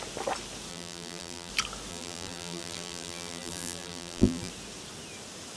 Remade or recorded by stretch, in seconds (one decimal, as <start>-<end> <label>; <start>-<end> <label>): 0.0-0.7 recorded; 0.7-1.5 remade; 1.5-1.9 recorded; 1.9-4.5 remade; 4.5-5.6 recorded